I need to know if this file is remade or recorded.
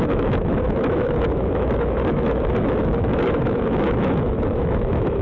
remade